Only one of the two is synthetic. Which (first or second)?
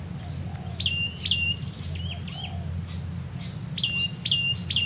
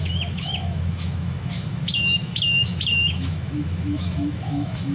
second